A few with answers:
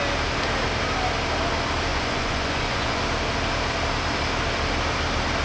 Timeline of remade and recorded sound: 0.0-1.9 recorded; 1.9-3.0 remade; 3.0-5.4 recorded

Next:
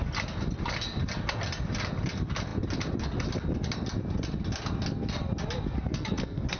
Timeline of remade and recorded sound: 0.0-5.9 recorded; 5.9-6.6 remade

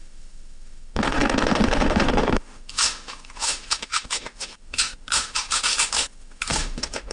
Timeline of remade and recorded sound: 0.0-7.1 remade

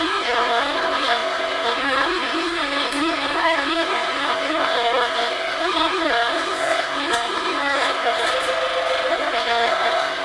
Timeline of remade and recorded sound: 0.0-8.3 remade; 8.3-9.1 recorded; 9.1-10.2 remade